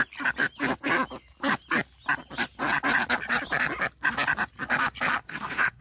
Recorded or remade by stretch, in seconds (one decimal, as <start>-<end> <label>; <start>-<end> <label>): 0.0-5.2 recorded; 5.2-5.8 remade